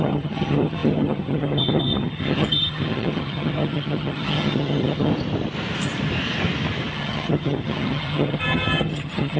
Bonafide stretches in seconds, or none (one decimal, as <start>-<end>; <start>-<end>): 5.1-6.9